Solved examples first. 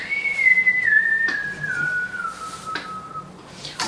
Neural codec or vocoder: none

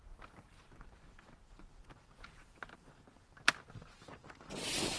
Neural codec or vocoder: none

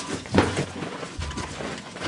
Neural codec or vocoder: vocoder, Vocos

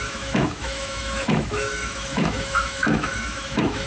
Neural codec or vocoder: autoencoder, DAC-VAE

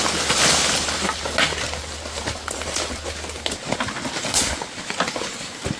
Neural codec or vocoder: none